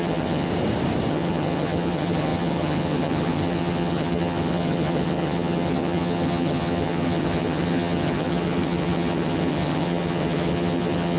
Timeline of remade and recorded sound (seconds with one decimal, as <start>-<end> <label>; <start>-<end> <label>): 0.0-0.5 remade; 0.5-1.1 recorded; 1.1-11.2 remade